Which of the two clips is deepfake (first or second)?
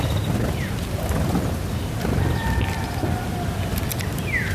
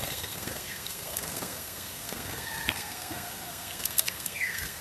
second